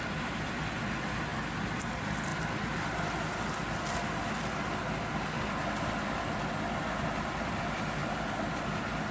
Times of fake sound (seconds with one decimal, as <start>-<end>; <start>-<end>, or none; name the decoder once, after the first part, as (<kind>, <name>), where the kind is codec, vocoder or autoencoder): none